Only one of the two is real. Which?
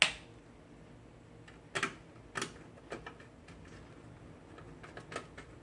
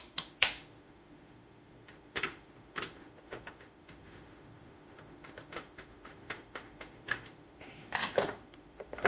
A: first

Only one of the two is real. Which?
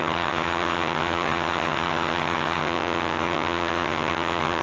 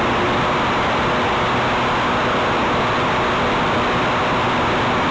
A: second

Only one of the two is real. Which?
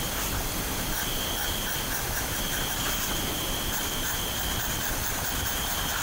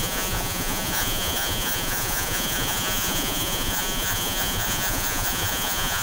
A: first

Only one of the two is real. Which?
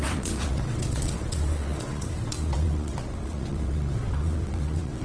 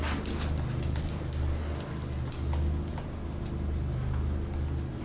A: second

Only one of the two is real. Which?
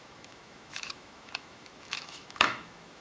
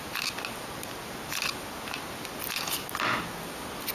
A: second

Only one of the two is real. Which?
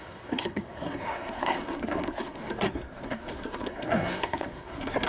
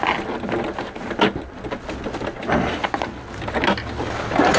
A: second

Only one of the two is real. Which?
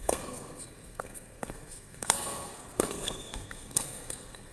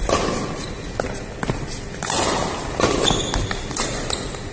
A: second